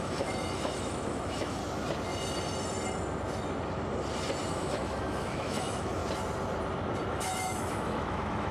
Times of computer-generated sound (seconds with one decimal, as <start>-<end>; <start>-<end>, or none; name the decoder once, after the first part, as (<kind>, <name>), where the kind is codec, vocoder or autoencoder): 0.0-1.6 (autoencoder, DAC-VAE); 4.5-6.0; 7.1-8.5